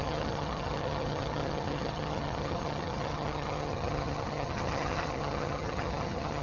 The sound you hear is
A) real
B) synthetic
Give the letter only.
B